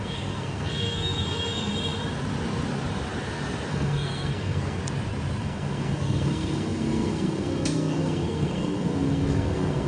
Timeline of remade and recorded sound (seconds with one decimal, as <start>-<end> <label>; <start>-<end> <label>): 0.0-1.7 remade; 1.7-3.7 recorded; 3.7-4.8 remade; 4.8-5.4 recorded; 5.4-9.9 remade